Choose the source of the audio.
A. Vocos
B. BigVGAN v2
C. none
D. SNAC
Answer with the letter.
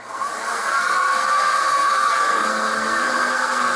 D